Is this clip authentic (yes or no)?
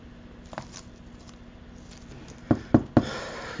yes